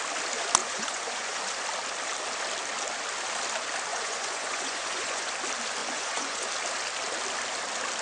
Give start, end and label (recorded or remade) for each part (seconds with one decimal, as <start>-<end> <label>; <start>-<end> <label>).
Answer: 0.0-0.6 recorded; 0.6-1.4 remade; 1.4-3.9 recorded; 3.9-5.3 remade; 5.3-5.8 recorded; 5.8-6.5 remade; 6.5-8.0 recorded